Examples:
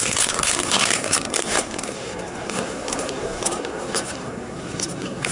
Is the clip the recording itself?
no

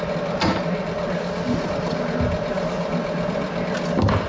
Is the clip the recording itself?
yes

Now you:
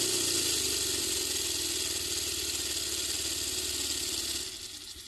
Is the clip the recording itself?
yes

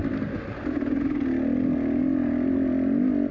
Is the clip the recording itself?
yes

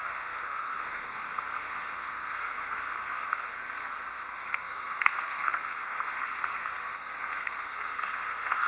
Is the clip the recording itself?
no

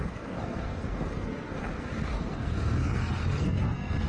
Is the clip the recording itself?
no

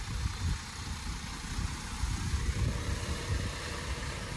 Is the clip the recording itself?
yes